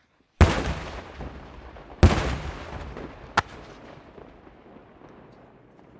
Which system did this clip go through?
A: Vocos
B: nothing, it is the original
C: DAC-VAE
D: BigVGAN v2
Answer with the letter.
B